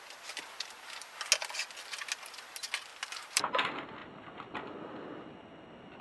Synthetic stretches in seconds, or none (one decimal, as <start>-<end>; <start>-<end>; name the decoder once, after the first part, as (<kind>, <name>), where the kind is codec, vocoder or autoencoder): 2.9-3.5 (vocoder, BigVGAN v2)